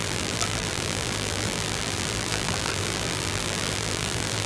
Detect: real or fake fake